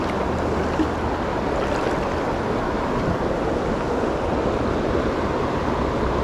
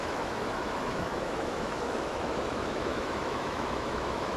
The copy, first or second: second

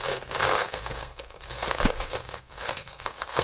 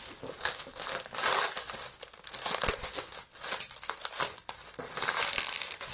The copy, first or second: first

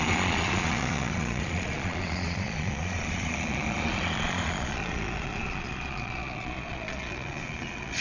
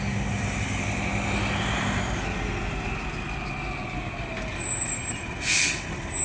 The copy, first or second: first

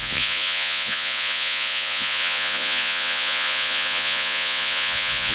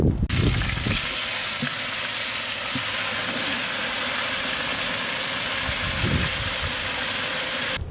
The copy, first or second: first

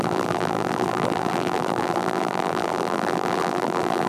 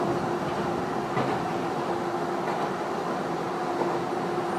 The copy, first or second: first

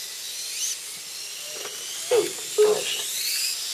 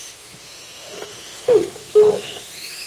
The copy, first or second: second